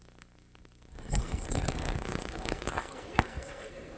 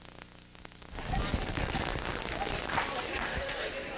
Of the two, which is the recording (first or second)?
second